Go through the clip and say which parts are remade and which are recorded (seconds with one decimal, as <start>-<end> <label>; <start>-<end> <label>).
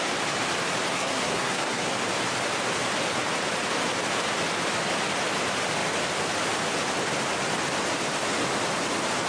0.0-0.9 recorded; 0.9-1.9 remade; 1.9-9.3 recorded